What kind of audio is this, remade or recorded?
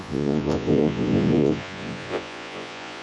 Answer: remade